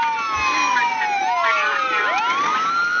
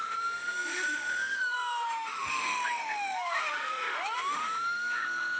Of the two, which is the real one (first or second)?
first